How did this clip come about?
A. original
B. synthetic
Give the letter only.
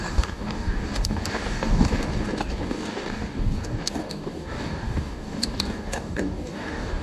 B